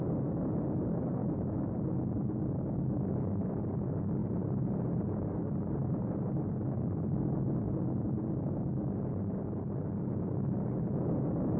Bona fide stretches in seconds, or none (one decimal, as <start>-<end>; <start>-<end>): 0.0-4.2; 6.1-11.6